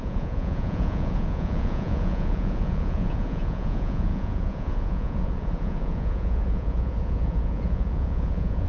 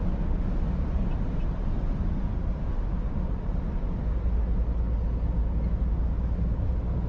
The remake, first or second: first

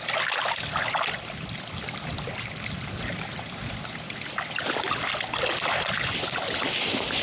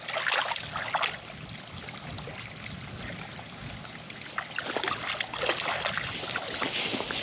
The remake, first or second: first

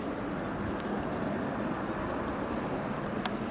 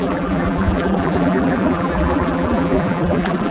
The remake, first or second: second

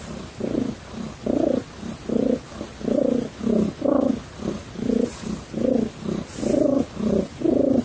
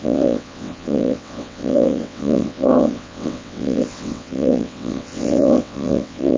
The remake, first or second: second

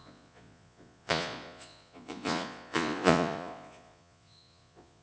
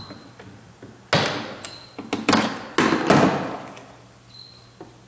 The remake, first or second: first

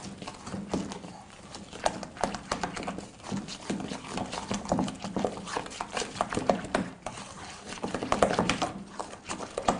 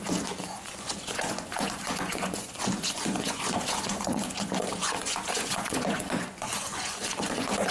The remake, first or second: second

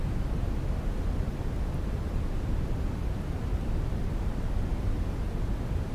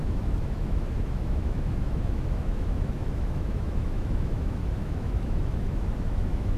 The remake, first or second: second